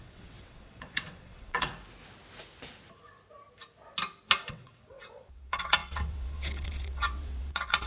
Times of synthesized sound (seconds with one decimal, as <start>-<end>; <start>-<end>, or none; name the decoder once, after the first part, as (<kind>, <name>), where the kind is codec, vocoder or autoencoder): 0.0-1.7 (vocoder, WaveNeXt); 4.5-7.9